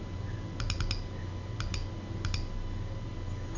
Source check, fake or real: real